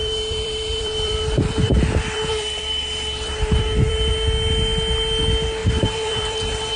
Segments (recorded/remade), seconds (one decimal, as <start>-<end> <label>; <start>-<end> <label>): 0.0-4.1 remade; 4.1-5.6 recorded; 5.6-6.8 remade